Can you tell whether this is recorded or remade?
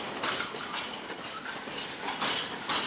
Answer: recorded